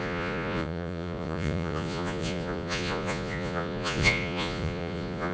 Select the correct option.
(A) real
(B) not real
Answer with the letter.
B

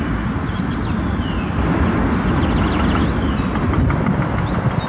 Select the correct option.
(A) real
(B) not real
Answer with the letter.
A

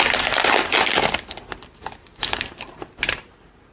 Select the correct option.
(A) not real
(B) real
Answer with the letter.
B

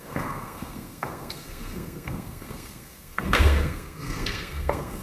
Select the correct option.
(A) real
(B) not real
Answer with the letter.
B